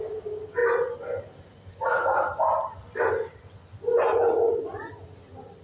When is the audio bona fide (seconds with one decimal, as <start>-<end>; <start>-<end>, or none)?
0.0-5.6